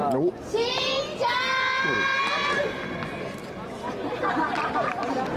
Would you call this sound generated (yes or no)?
no